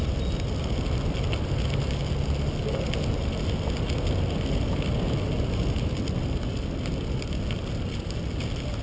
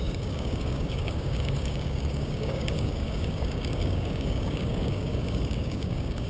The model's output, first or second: second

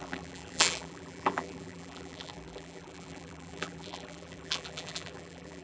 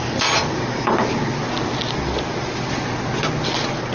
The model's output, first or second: first